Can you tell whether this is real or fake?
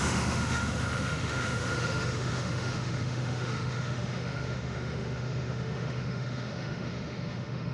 fake